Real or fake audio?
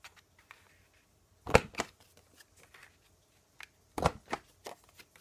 real